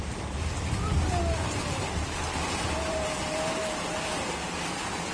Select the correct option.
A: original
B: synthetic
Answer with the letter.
B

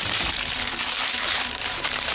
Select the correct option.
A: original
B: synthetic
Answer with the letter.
B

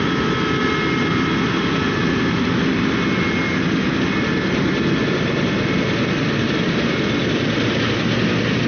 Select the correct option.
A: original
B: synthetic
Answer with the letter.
A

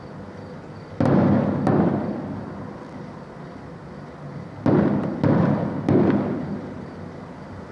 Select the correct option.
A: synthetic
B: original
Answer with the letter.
B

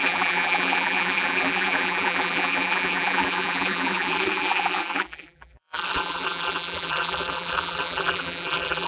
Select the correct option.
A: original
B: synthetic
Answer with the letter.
B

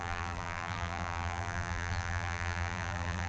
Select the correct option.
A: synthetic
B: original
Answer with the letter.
A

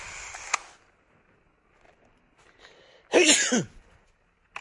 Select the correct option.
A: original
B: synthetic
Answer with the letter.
A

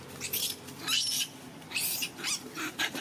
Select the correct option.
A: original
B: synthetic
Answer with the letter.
A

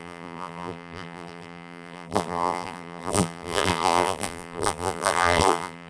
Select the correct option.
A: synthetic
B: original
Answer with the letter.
A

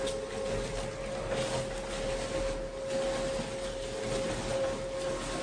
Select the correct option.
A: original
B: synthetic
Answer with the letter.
A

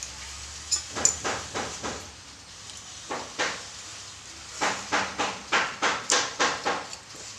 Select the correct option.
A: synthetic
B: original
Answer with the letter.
B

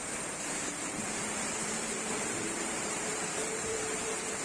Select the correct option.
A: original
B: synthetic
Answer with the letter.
B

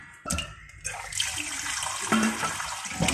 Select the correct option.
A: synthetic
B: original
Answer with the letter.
B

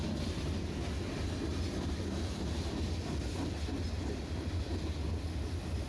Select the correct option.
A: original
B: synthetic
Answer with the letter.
A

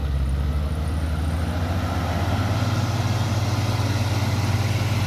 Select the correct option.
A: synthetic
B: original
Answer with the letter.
B